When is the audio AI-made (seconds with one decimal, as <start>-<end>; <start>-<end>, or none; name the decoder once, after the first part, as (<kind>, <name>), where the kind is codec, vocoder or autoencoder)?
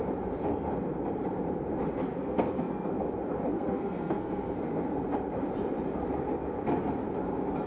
2.1-2.9 (codec, SNAC); 3.5-5.1